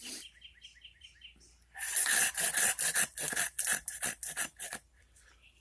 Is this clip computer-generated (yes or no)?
no